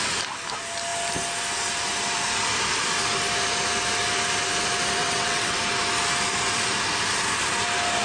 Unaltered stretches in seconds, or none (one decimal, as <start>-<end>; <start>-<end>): 0.0-5.0; 5.6-8.0